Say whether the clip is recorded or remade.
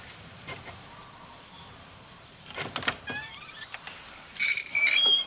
remade